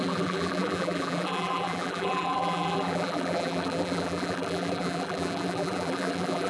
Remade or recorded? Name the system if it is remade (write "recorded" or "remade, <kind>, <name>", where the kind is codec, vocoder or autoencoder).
remade, vocoder, BigVGAN v2